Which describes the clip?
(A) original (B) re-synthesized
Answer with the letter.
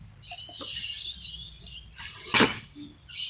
A